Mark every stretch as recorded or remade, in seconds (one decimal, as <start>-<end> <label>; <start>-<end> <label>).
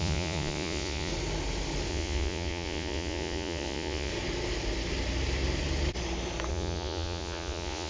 0.0-1.1 remade; 1.1-1.9 recorded; 1.9-4.1 remade; 4.1-6.5 recorded; 6.5-7.9 remade